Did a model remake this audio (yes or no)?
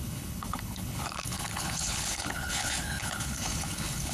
yes